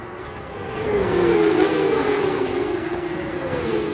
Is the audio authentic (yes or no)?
no